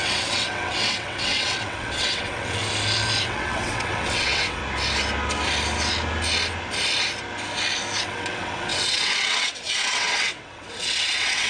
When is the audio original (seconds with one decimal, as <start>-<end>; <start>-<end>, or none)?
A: 2.6-3.2; 4.6-8.0